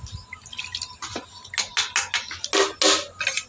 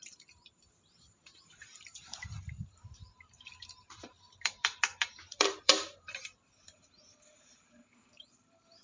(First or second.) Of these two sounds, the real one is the first